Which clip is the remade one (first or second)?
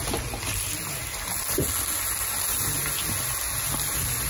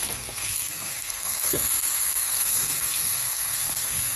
second